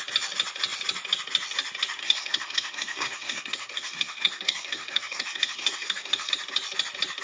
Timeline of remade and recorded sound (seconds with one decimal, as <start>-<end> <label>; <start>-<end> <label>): 0.0-2.0 recorded; 2.0-6.3 remade; 6.3-7.2 recorded

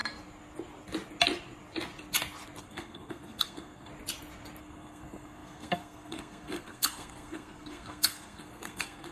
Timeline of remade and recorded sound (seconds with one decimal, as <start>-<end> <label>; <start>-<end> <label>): 0.0-2.6 recorded; 2.6-3.9 remade; 3.9-4.6 recorded; 4.6-9.1 remade

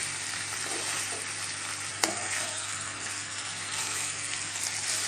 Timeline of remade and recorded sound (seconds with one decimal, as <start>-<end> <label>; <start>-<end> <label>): 0.0-1.9 recorded; 1.9-4.6 remade; 4.6-5.1 recorded

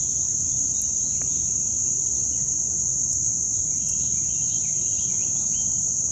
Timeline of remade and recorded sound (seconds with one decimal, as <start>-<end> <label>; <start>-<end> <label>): 0.0-6.1 recorded